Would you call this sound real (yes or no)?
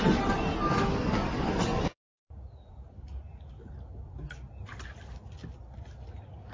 yes